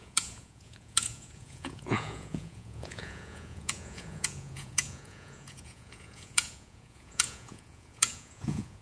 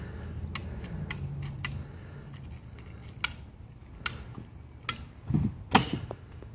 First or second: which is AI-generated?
first